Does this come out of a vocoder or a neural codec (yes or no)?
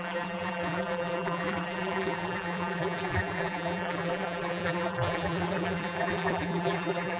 yes